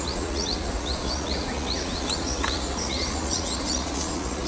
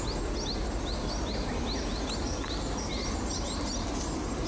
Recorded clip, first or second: second